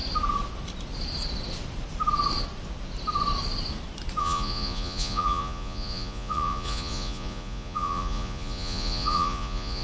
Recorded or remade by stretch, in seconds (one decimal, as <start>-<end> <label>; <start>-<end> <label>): 0.0-4.2 recorded; 4.2-9.8 remade